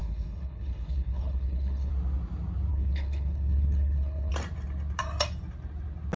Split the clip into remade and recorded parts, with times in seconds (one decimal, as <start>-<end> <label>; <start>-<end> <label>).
0.0-1.9 remade; 1.9-2.7 recorded; 2.7-4.3 remade; 4.3-6.2 recorded